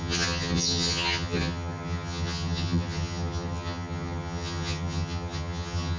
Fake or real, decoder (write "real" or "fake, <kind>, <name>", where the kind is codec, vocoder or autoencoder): fake, vocoder, HiFi-GAN